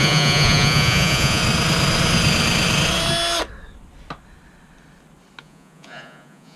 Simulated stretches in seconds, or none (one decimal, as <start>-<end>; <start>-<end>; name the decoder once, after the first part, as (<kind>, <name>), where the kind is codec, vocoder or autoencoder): 0.0-1.4 (vocoder, Vocos); 5.4-6.6

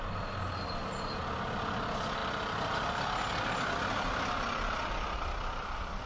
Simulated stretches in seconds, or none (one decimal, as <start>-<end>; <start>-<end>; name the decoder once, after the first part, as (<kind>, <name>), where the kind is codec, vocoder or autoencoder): none